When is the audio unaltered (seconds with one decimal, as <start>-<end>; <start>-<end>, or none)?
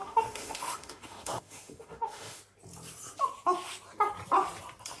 2.4-5.0